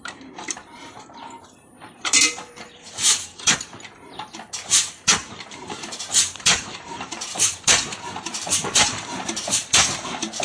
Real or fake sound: fake